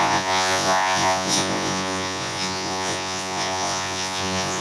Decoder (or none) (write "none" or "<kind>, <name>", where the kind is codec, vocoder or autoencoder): vocoder, Vocos